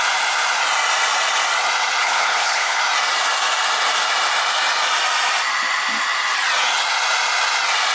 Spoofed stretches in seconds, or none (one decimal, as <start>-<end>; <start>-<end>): 2.0-2.8